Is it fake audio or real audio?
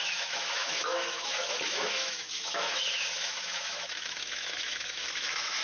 fake